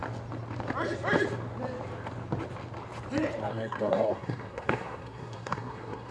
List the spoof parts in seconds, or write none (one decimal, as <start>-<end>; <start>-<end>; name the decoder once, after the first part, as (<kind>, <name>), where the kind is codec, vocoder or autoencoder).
3.5-6.1 (codec, SNAC)